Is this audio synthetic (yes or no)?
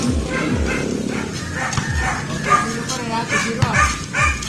no